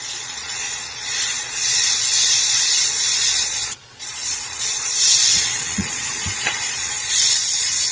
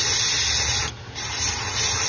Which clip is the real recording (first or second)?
second